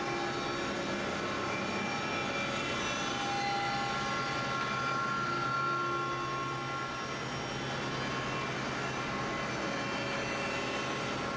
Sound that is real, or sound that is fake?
real